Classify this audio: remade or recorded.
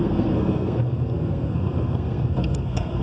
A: remade